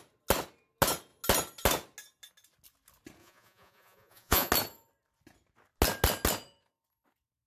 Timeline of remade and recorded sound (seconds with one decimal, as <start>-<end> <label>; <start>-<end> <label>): 0.0-3.2 recorded; 3.2-4.5 remade; 4.5-7.5 recorded